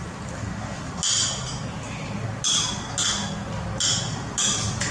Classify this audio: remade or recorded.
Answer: recorded